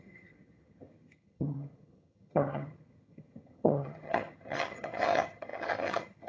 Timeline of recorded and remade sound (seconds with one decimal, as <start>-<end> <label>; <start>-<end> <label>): 0.0-6.3 remade